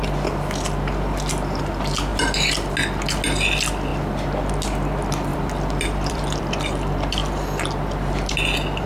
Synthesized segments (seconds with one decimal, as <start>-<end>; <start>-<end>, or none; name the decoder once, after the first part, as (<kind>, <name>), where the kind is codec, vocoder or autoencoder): 3.9-4.5 (vocoder, BigVGAN v2); 5.3-6.4